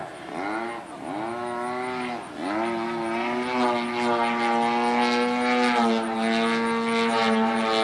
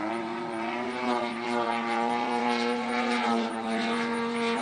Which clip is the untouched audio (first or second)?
first